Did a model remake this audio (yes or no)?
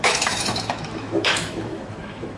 yes